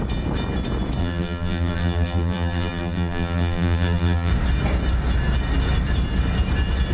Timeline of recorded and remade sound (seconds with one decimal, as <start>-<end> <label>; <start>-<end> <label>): 0.0-1.0 recorded; 1.0-4.3 remade; 4.3-6.9 recorded